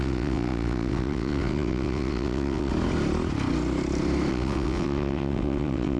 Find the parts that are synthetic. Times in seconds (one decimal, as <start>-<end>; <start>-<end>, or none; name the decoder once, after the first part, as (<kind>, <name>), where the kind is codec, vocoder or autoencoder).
0.0-2.7 (vocoder, WaveNeXt); 4.3-6.0